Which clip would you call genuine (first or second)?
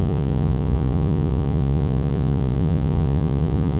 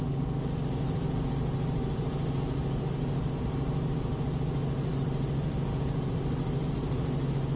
second